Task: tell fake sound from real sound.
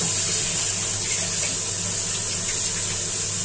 real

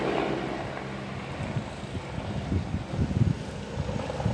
real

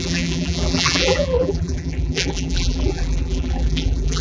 fake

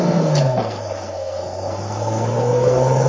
fake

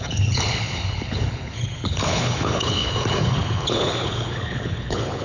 fake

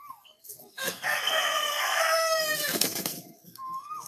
fake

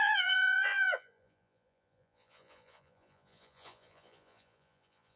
fake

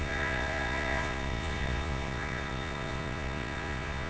fake